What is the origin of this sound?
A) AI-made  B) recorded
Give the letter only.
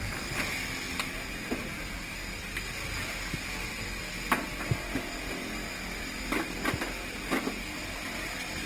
B